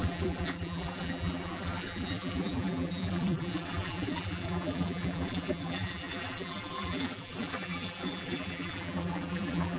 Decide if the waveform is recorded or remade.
remade